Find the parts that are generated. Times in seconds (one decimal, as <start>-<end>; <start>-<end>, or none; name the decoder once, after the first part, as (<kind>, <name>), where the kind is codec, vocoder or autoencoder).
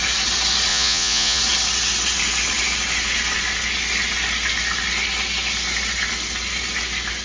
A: 0.7-1.4 (vocoder, Vocos)